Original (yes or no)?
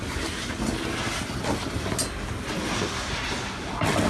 yes